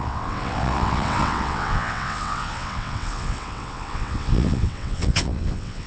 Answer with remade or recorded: remade